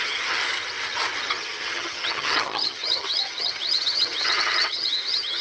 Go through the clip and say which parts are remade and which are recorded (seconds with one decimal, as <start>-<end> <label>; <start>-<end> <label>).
0.0-0.4 remade; 0.4-1.4 recorded; 1.4-5.4 remade